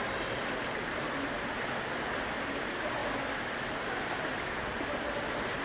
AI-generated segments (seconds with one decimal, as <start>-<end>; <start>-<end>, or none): none